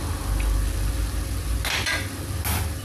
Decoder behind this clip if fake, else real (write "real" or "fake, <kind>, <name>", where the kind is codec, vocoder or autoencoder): real